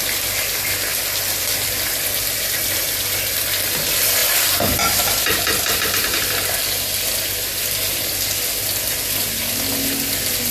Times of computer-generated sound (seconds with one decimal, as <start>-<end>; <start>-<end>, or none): none